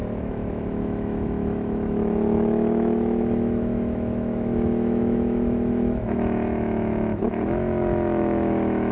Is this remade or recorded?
remade